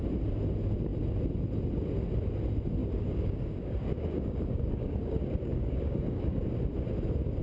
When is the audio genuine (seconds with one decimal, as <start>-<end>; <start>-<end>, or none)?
0.0-2.8; 6.5-7.4